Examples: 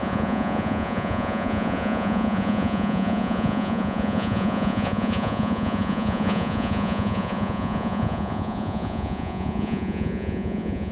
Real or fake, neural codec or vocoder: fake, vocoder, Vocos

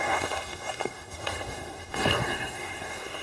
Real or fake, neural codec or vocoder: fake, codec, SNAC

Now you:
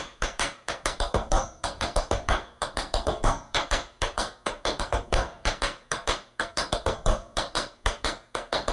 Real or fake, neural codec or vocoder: fake, codec, SNAC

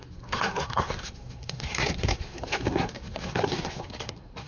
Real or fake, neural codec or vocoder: fake, codec, SNAC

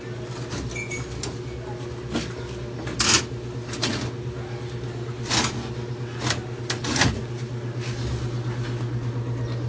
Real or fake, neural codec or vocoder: real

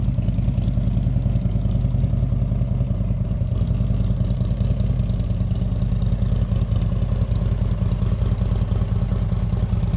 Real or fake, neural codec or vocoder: real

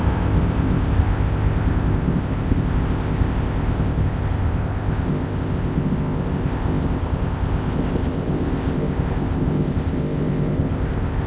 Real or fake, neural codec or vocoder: fake, codec, ZipCodec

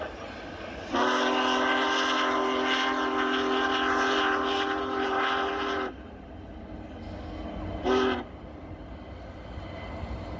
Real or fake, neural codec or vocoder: real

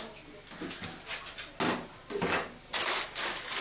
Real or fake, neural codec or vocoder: real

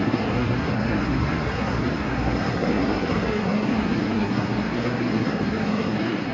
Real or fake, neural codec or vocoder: fake, codec, SNAC